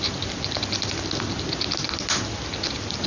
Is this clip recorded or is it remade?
recorded